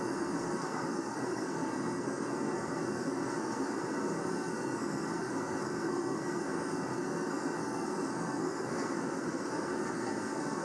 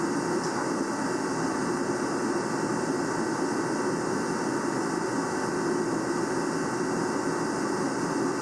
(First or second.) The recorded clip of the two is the second